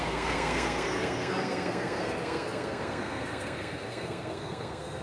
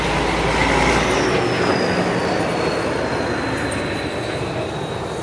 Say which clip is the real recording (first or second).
second